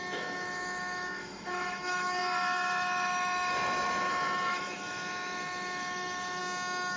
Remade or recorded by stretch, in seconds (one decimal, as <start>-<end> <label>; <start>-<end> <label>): 0.0-6.4 remade; 6.4-7.0 recorded